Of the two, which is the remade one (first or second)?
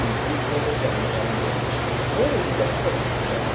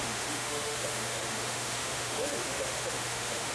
second